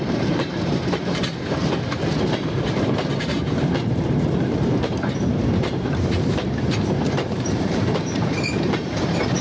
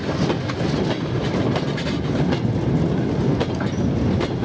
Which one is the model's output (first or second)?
first